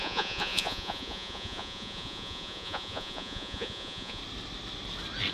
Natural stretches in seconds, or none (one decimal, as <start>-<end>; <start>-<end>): 4.2-5.3